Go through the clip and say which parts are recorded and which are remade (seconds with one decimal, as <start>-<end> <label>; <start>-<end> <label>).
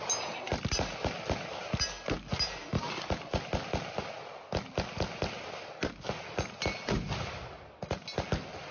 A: 0.0-8.7 recorded